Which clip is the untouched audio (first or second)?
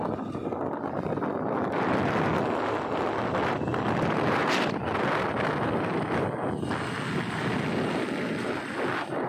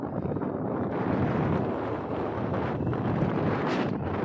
first